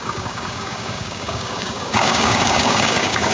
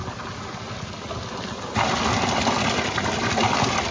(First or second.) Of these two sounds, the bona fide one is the second